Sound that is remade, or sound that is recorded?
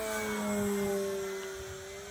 recorded